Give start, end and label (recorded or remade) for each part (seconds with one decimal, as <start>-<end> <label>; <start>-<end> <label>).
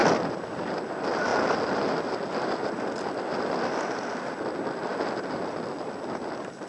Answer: 0.0-6.7 recorded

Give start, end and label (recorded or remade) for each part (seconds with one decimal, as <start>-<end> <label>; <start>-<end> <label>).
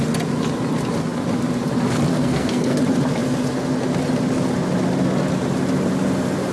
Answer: 0.0-2.1 recorded; 2.1-2.8 remade; 2.8-6.5 recorded